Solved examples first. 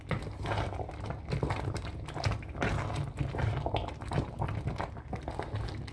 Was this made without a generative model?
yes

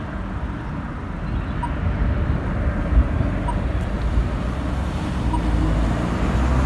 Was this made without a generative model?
yes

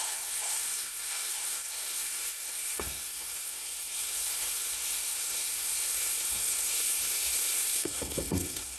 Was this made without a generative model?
no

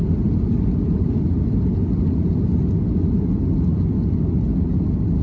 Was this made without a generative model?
yes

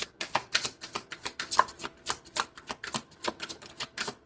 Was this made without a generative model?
yes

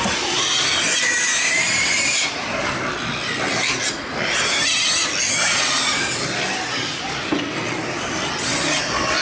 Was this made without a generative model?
yes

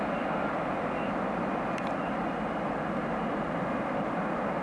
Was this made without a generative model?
yes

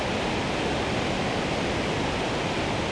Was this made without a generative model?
yes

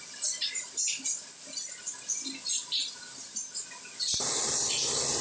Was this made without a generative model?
yes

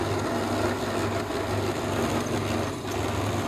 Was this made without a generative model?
yes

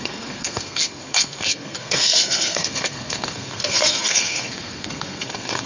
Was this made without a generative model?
no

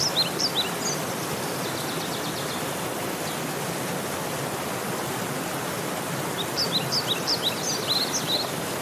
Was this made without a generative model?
yes